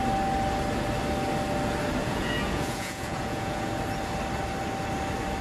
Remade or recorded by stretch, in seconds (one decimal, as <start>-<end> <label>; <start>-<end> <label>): 0.0-2.0 recorded; 2.0-3.7 remade; 3.7-5.4 recorded